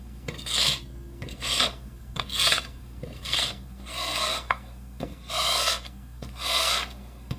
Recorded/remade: remade